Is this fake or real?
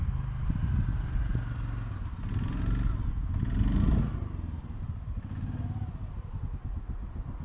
real